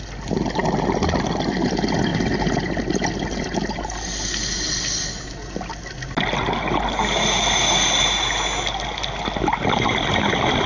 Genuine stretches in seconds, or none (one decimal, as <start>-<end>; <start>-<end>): 0.0-10.7